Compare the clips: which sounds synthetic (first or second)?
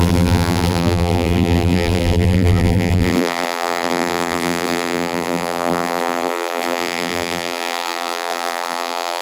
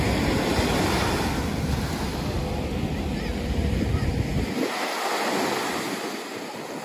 first